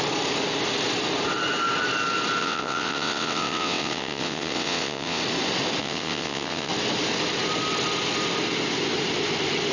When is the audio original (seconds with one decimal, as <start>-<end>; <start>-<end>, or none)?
0.0-2.4; 5.2-5.8; 6.7-9.7